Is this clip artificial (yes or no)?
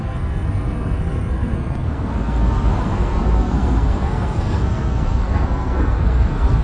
yes